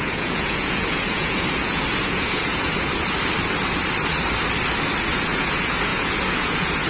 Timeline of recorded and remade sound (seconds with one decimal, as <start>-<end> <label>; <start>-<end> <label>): 0.0-2.9 remade; 2.9-5.1 recorded; 5.1-6.9 remade